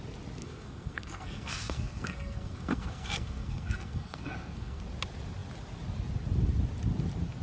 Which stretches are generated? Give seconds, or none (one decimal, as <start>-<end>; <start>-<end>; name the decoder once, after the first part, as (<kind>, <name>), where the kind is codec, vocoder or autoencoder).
0.4-4.8 (codec, SNAC)